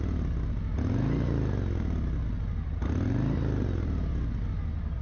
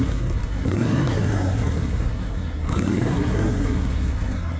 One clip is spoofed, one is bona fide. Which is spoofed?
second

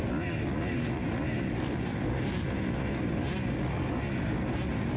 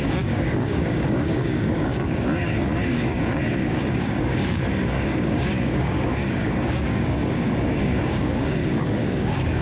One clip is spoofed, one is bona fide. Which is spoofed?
second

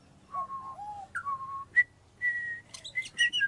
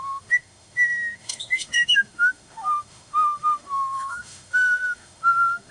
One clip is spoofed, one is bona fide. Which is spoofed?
second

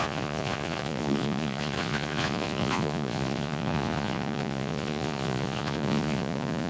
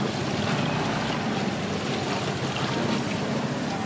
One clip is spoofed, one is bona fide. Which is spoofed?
first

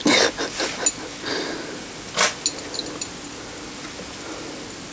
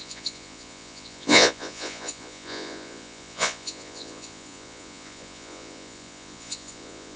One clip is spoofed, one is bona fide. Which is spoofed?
second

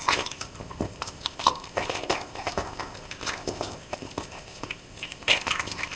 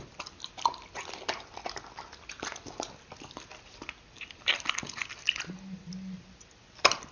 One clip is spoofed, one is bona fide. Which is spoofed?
first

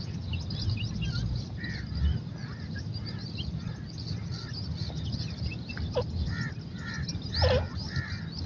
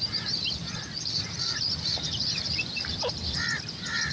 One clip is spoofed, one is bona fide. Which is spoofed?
second